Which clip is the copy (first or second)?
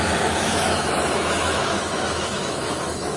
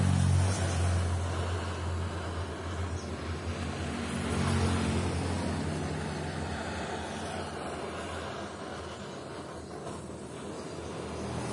first